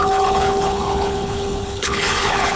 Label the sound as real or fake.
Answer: fake